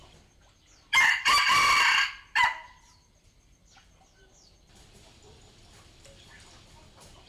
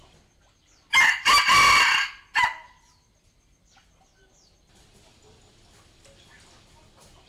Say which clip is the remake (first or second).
first